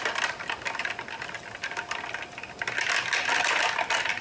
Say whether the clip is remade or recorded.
recorded